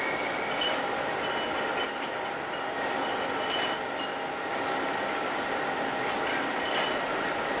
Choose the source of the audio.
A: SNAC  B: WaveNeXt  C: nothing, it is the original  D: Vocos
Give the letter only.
C